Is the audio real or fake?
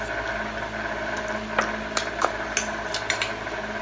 real